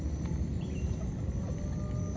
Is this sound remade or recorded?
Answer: recorded